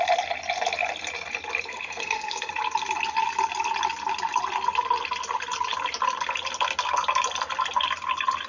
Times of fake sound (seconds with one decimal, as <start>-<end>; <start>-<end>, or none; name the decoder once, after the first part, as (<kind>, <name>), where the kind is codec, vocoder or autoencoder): 1.7-2.5 (codec, SNAC)